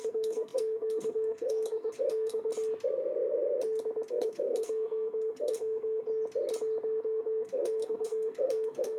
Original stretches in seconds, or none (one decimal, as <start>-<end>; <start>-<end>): 2.5-4.1; 6.1-7.0